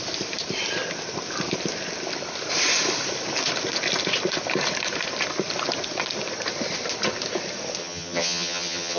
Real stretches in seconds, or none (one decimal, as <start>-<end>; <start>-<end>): 0.0-7.8